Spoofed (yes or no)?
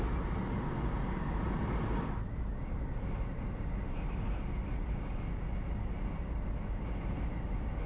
no